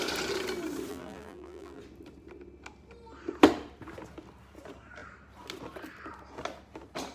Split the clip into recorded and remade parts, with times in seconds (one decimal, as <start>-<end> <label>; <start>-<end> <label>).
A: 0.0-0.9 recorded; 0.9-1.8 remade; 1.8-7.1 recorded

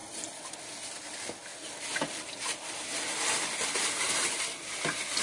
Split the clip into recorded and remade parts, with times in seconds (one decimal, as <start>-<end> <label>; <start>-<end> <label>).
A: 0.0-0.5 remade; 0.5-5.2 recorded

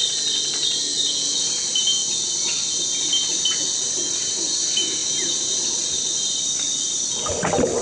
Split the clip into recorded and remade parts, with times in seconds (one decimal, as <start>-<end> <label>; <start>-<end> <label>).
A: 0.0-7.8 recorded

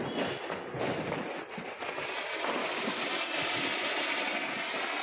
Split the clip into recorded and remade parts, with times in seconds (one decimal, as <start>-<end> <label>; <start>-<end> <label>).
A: 0.0-2.6 recorded; 2.6-3.1 remade; 3.1-5.0 recorded

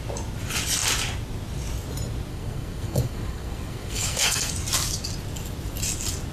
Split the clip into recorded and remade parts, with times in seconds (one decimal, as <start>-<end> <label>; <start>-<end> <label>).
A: 0.0-2.3 recorded; 2.3-4.5 remade; 4.5-6.3 recorded

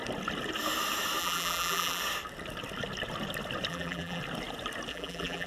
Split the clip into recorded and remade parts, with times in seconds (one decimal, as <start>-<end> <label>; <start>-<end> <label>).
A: 0.0-1.2 recorded; 1.2-2.0 remade; 2.0-3.7 recorded; 3.7-4.2 remade; 4.2-4.9 recorded; 4.9-5.5 remade

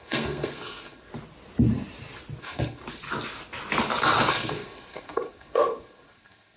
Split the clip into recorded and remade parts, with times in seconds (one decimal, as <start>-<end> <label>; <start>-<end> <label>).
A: 0.0-1.1 remade; 1.1-2.4 recorded; 2.4-2.8 remade; 2.8-4.3 recorded; 4.3-6.6 remade

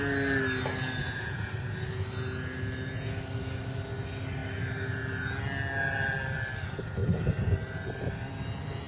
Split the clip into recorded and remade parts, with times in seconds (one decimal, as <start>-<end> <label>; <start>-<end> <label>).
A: 0.0-1.0 recorded; 1.0-1.5 remade; 1.5-8.9 recorded